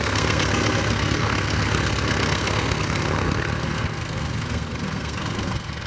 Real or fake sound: fake